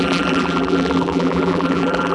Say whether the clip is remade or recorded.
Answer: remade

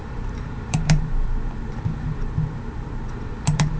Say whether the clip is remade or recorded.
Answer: remade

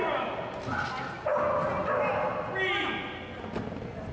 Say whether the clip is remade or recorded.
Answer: recorded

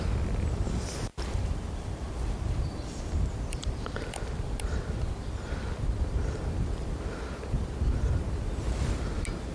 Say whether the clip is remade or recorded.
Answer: remade